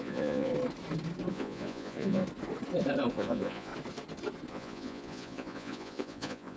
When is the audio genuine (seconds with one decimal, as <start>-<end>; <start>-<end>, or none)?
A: 0.5-1.3; 2.2-3.1; 3.7-4.5